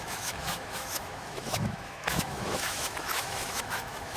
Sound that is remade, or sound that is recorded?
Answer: remade